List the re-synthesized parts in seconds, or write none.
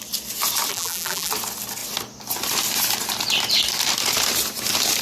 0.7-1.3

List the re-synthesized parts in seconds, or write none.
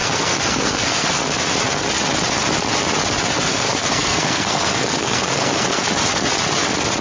0.0-1.1; 3.5-5.9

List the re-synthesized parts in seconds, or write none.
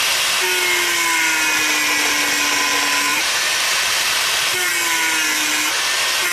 3.1-4.7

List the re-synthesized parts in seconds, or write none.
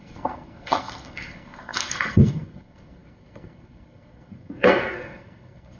0.0-5.8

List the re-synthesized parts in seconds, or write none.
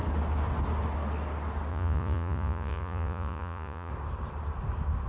1.7-3.9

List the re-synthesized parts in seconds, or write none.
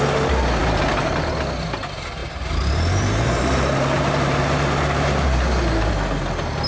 0.6-1.1; 2.2-5.9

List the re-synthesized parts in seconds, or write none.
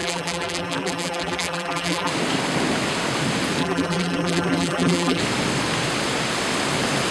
0.0-2.1; 3.6-5.2